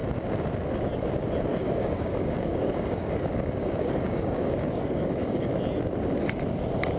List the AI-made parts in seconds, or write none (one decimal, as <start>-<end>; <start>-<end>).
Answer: 1.5-5.5